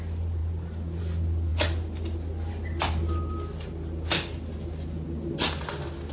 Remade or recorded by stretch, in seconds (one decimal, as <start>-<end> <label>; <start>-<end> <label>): 0.0-6.1 recorded